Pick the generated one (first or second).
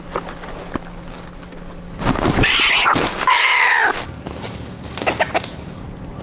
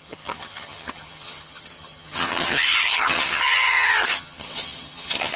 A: second